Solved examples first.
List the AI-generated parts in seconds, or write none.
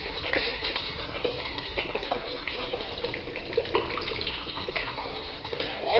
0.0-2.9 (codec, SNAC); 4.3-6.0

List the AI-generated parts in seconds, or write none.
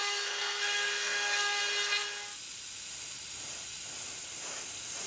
0.0-1.6 (codec, SNAC)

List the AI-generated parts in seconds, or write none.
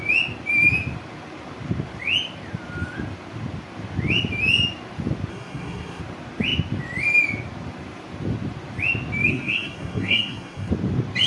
5.3-6.0 (codec, SNAC); 9.3-10.7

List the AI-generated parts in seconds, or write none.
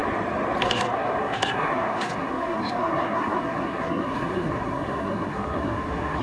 0.6-6.2 (codec, SNAC)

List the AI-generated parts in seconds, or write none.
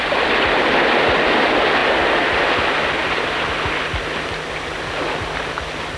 none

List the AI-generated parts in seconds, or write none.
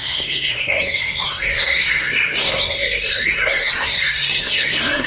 0.0-5.1 (codec, SNAC)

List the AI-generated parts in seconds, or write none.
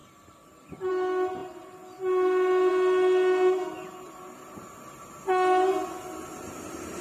none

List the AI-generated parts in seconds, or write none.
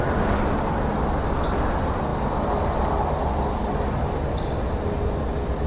none